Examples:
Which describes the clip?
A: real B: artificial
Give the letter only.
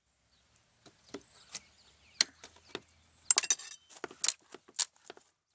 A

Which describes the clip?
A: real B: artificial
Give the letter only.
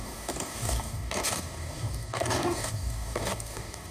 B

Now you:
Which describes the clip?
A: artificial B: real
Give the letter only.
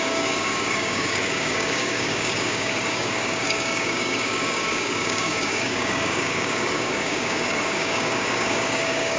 A